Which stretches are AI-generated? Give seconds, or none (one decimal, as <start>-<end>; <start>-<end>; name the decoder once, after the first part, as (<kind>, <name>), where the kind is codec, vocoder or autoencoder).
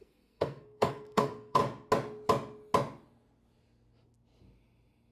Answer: 0.0-1.6 (codec, SNAC)